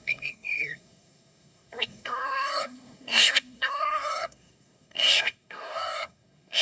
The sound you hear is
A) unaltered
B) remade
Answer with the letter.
B